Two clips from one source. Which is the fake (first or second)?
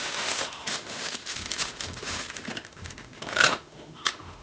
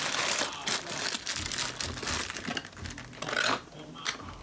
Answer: first